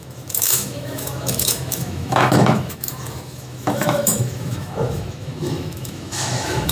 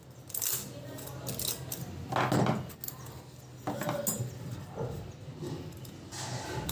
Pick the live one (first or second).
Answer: second